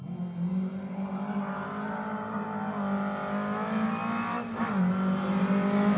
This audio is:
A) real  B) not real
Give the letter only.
A